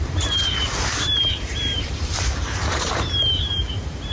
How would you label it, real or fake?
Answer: fake